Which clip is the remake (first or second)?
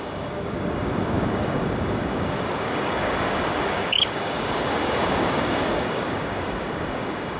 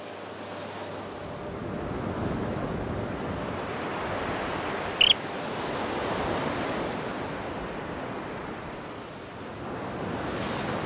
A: first